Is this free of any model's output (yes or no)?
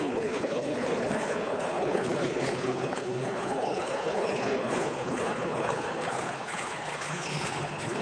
no